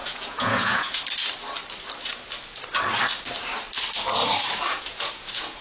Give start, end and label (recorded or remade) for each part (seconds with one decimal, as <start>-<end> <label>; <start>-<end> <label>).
0.0-1.0 remade; 1.0-4.7 recorded; 4.7-5.6 remade